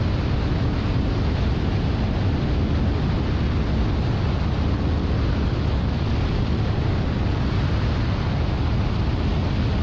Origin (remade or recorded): recorded